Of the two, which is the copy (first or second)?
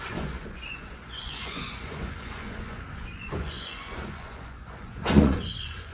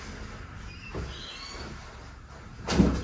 first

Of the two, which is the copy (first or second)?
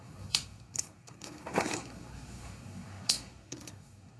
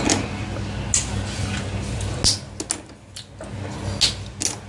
first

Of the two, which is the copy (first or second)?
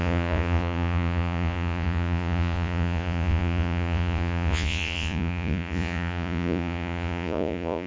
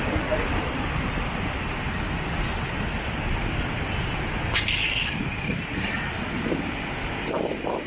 first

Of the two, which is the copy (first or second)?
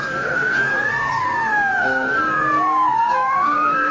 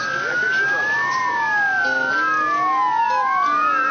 first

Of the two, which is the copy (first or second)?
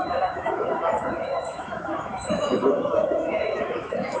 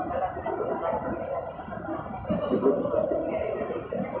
first